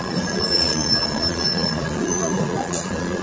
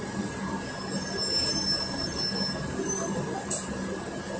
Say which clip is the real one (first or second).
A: second